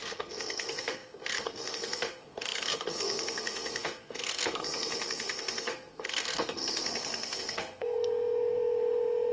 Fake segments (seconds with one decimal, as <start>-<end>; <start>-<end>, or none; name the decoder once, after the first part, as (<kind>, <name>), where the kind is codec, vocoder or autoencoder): 0.0-9.3 (codec, SNAC)